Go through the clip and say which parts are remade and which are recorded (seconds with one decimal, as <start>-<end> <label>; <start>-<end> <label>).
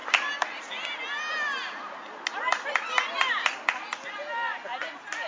0.0-5.3 recorded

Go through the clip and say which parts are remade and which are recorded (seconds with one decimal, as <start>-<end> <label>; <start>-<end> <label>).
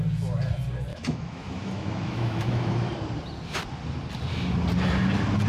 0.0-0.9 recorded; 0.9-2.9 remade; 2.9-5.5 recorded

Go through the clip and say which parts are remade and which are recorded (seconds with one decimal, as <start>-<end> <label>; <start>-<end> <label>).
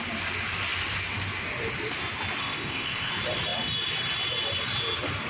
0.0-2.4 recorded; 2.4-3.1 remade; 3.1-5.3 recorded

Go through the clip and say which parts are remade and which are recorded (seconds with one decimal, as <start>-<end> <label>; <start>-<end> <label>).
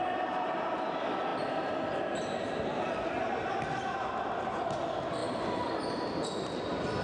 0.0-7.0 recorded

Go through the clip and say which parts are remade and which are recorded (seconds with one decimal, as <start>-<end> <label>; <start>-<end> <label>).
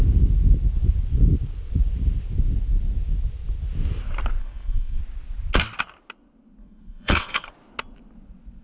0.0-4.4 recorded; 4.4-5.0 remade; 5.0-6.6 recorded; 6.6-7.5 remade; 7.5-8.6 recorded